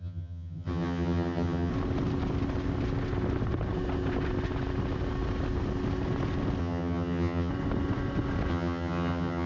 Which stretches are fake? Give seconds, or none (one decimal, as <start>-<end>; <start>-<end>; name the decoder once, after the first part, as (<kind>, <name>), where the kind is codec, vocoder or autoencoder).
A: 0.0-1.7 (vocoder, HiFi-GAN); 6.6-7.5; 8.5-9.5